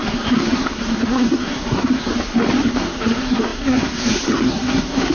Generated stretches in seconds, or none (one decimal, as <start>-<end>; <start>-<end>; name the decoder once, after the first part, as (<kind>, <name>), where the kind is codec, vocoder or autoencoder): 0.0-2.1 (codec, SNAC); 2.7-5.1